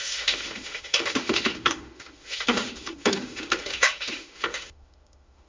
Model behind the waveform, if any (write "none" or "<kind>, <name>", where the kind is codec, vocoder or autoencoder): autoencoder, DAC-VAE